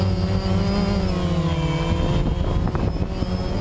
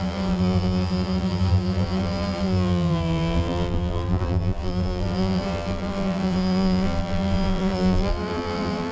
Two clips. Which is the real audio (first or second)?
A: first